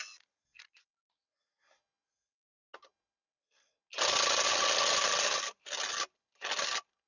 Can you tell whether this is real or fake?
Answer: real